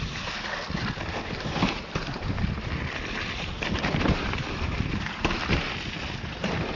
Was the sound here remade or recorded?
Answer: recorded